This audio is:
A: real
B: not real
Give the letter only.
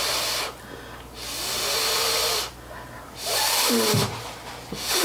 A